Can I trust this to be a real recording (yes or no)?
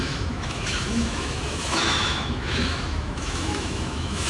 no